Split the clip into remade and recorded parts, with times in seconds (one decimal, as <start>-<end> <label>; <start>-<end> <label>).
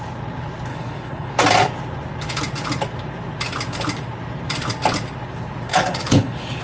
0.0-0.7 recorded; 0.7-1.3 remade; 1.3-5.7 recorded; 5.7-6.6 remade